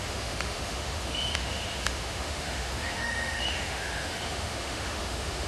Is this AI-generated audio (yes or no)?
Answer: yes